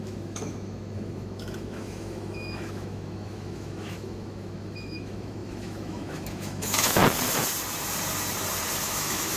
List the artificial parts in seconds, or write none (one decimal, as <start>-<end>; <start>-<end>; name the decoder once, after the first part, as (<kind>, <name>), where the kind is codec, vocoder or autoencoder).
0.0-7.0 (autoencoder, DAC-VAE); 8.8-9.4